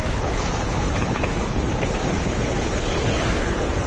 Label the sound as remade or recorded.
remade